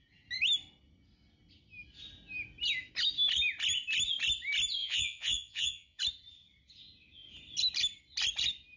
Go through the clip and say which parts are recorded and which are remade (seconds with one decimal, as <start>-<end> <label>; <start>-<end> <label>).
0.0-4.8 recorded; 4.8-6.0 remade; 6.0-8.8 recorded